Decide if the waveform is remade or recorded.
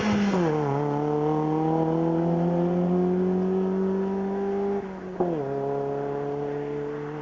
recorded